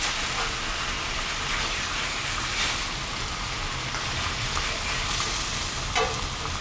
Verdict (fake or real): fake